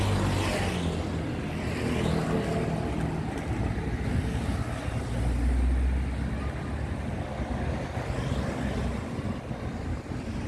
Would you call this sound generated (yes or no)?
no